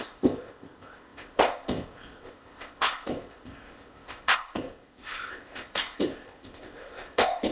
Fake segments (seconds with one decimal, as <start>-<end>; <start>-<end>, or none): 0.0-7.5